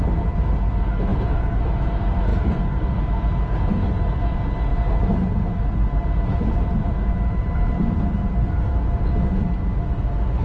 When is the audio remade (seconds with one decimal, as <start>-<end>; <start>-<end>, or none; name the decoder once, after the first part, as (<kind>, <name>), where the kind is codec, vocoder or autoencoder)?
1.1-1.9 (vocoder, BigVGAN v2); 4.7-9.1